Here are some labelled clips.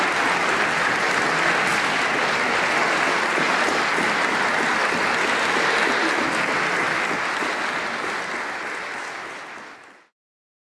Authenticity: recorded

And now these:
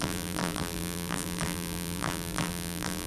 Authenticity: remade